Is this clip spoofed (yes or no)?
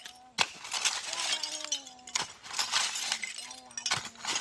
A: no